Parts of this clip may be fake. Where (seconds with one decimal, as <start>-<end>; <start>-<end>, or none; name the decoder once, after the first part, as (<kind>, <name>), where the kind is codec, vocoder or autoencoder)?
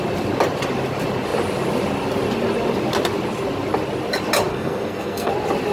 4.5-5.3 (codec, SNAC)